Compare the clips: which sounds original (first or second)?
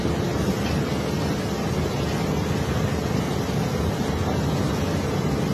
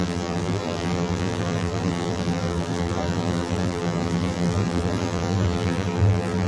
first